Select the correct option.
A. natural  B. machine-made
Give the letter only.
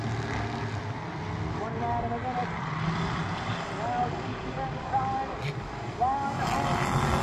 A